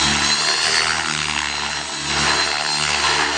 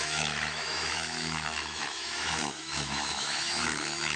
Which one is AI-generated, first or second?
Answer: second